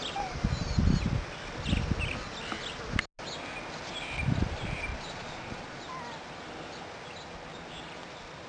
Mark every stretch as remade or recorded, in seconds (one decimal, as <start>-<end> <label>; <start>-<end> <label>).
0.0-4.9 recorded; 4.9-5.8 remade; 5.8-8.5 recorded

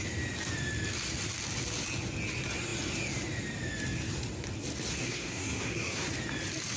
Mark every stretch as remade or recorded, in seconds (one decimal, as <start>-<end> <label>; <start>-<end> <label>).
0.0-4.9 recorded; 4.9-6.1 remade; 6.1-6.8 recorded

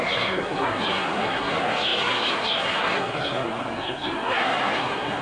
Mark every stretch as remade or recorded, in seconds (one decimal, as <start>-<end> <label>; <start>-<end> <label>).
0.0-5.2 remade

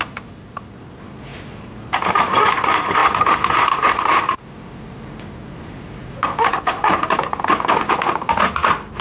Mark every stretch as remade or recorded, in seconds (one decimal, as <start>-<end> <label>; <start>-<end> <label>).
0.0-3.0 remade; 3.0-3.9 recorded; 3.9-9.0 remade

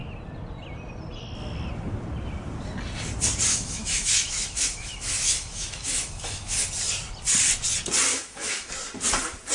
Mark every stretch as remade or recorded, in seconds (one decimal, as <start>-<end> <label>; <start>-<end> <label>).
0.0-3.5 recorded; 3.5-6.7 remade; 6.7-8.1 recorded; 8.1-8.7 remade; 8.7-9.5 recorded

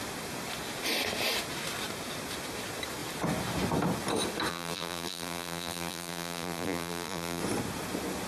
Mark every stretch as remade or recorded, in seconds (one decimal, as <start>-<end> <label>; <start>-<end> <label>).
0.0-4.5 recorded; 4.5-7.4 remade; 7.4-8.3 recorded